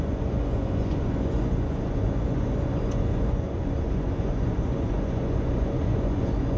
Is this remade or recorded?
remade